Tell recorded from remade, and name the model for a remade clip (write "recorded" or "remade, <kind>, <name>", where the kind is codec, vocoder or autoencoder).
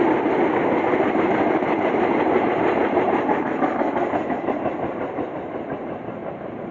recorded